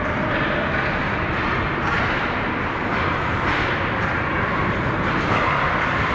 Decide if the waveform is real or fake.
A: fake